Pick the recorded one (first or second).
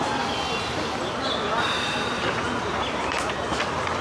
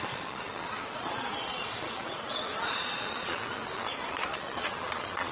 first